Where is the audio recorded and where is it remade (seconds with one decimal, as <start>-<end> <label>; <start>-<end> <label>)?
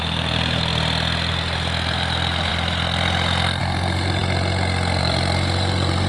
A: 0.0-0.7 remade; 0.7-1.3 recorded; 1.3-2.5 remade; 2.5-3.6 recorded; 3.6-4.2 remade; 4.2-5.0 recorded; 5.0-6.1 remade